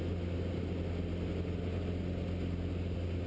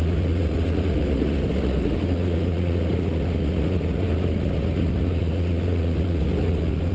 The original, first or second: first